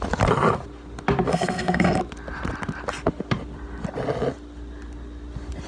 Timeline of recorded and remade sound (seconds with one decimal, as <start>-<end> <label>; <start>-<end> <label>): 0.0-1.3 recorded; 1.3-2.0 remade; 2.0-5.7 recorded